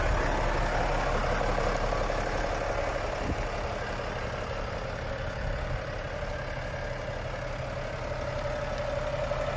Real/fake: real